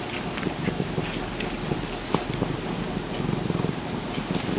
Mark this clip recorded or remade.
recorded